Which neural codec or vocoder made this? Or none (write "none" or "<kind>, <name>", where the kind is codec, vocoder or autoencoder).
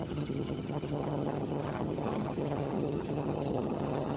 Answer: vocoder, HiFi-GAN